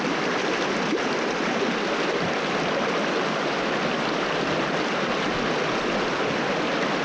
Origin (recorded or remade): recorded